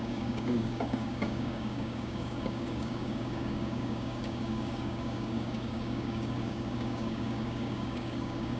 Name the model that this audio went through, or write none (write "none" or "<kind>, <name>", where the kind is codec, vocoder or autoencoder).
codec, DAC